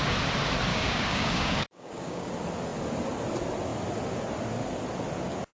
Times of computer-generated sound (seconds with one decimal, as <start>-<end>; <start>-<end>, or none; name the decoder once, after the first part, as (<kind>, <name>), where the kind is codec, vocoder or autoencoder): 0.7-2.3 (codec, DAC)